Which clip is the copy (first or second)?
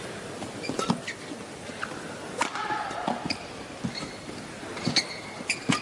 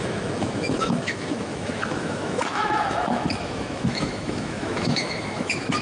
second